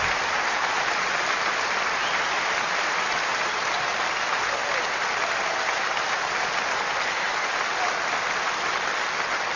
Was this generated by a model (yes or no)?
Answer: no